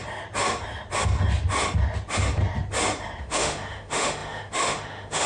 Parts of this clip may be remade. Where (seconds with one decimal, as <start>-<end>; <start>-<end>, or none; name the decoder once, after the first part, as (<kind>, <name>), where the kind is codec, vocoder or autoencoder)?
3.2-5.3 (autoencoder, DAC-VAE)